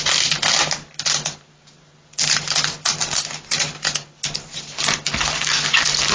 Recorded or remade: recorded